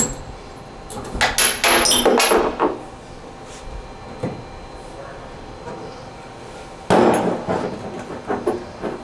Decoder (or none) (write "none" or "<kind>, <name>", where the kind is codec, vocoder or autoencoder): none